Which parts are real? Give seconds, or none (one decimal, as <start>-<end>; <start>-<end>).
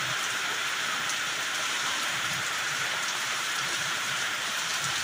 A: none